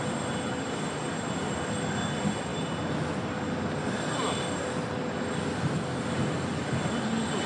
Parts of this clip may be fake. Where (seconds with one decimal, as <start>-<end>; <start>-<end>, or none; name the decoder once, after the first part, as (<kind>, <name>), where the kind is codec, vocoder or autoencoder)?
none